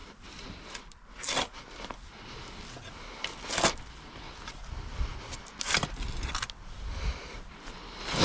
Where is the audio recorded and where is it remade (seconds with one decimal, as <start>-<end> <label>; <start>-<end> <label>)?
0.0-8.2 recorded